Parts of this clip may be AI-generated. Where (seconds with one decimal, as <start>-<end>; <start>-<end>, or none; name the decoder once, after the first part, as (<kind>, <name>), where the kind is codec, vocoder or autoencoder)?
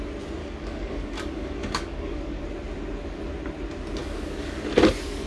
0.4-2.4 (codec, DAC); 4.0-4.6